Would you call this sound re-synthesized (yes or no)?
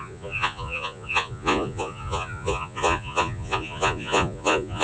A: yes